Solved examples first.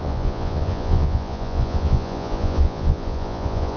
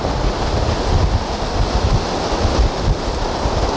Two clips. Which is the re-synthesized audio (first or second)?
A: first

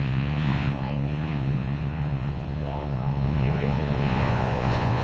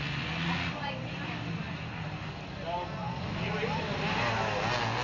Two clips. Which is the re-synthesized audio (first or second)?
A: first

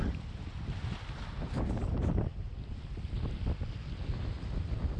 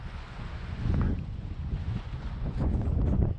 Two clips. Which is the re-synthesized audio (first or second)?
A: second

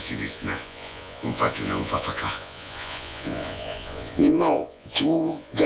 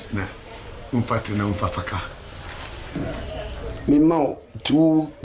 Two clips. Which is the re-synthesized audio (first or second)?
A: first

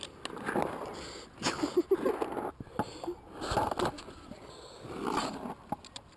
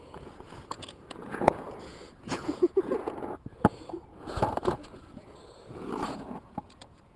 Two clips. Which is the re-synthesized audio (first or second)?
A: second